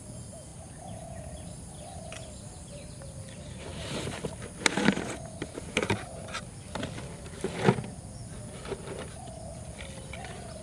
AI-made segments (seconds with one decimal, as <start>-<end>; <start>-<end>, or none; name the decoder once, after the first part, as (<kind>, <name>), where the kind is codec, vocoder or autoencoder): 0.5-3.0 (vocoder, BigVGAN v2); 3.7-5.9